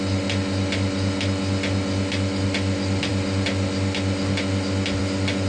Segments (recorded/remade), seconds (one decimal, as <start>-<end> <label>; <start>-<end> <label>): 0.0-5.5 recorded